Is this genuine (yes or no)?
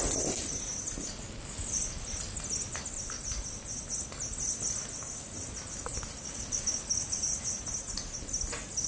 yes